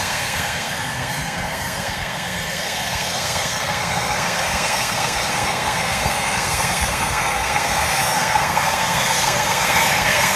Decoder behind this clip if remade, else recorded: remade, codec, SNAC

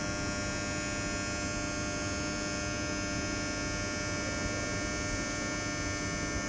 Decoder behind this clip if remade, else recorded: recorded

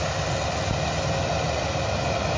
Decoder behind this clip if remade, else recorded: recorded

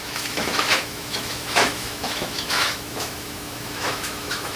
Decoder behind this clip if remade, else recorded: remade, autoencoder, DAC-VAE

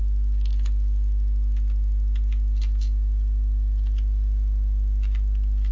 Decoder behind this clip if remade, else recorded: recorded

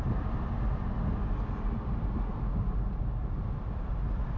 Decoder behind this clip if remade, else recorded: recorded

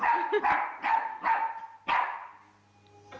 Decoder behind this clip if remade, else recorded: recorded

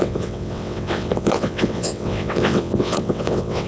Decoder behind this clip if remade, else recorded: remade, vocoder, WaveNeXt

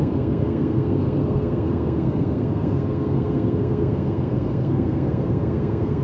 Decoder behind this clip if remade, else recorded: remade, codec, SNAC